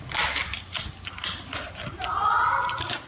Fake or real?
real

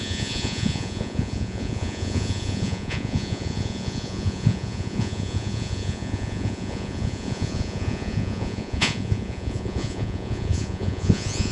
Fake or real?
fake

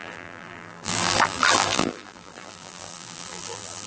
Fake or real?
fake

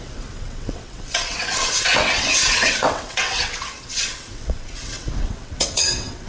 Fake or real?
fake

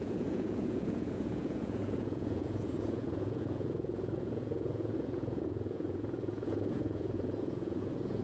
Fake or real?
fake